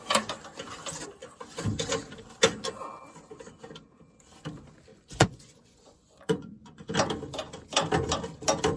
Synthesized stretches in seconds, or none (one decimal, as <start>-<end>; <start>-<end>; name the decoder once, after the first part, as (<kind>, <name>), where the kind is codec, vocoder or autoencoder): 4.9-6.9 (vocoder, Vocos)